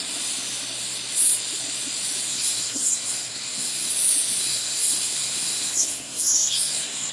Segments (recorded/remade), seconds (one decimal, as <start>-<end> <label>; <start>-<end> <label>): 0.0-2.3 recorded; 2.3-3.9 remade; 3.9-4.4 recorded; 4.4-7.1 remade